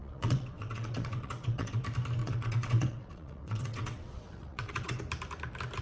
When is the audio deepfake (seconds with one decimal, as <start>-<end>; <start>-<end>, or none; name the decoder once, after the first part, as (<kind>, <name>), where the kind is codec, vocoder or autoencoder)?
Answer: 0.0-1.8 (vocoder, WaveNeXt); 2.2-5.0